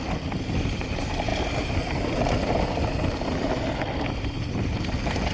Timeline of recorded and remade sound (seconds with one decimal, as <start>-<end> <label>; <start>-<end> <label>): 0.0-5.3 recorded